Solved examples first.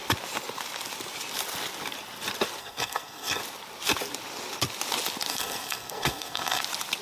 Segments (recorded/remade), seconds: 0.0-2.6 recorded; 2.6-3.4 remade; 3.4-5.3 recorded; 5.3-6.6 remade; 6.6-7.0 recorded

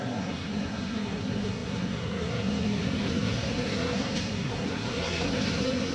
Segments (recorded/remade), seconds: 0.0-5.9 remade

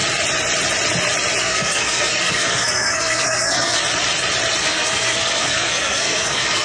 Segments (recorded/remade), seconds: 0.0-1.4 recorded; 1.4-3.8 remade; 3.8-4.6 recorded; 4.6-6.6 remade

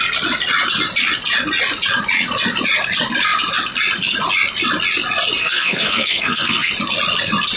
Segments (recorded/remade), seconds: 0.0-5.4 recorded; 5.4-6.7 remade; 6.7-7.6 recorded

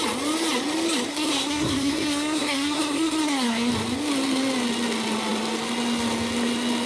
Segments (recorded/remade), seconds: 0.0-1.1 recorded; 1.1-3.7 remade; 3.7-6.9 recorded

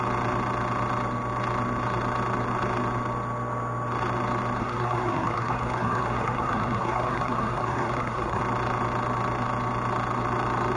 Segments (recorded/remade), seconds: 0.0-4.6 recorded; 4.6-8.4 remade; 8.4-10.8 recorded

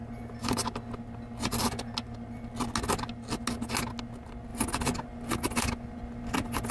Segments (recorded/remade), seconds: 0.0-6.7 recorded

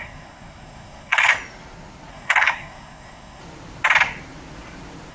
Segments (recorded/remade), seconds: 0.0-1.3 remade; 1.3-2.1 recorded; 2.1-3.4 remade; 3.4-5.1 recorded